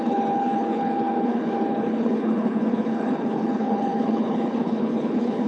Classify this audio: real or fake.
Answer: fake